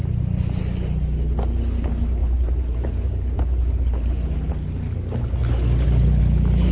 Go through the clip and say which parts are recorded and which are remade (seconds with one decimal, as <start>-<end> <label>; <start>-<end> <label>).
0.0-2.2 recorded; 2.2-4.1 remade; 4.1-6.7 recorded